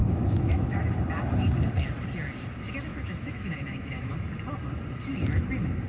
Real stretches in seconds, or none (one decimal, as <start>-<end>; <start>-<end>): 0.9-2.9; 4.1-5.9